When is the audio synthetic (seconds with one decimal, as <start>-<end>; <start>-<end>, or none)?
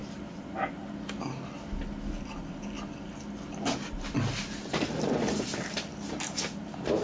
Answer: none